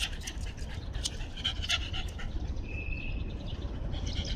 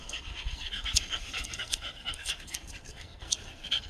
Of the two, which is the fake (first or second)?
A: second